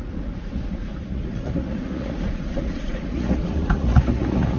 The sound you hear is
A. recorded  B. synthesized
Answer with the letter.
B